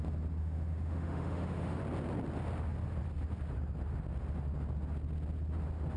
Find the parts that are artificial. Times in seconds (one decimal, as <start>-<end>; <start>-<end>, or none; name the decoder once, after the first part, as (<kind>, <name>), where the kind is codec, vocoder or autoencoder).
0.4-1.8 (autoencoder, DAC-VAE)